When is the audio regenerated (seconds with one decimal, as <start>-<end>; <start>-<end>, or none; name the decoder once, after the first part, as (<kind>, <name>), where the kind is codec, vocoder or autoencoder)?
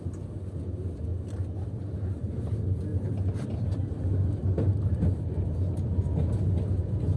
2.9-6.1 (vocoder, BigVGAN v2)